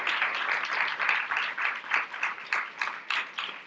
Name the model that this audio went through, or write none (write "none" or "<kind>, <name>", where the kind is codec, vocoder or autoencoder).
none